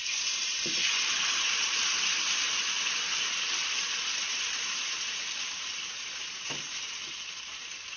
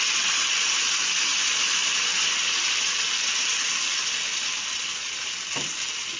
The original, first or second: second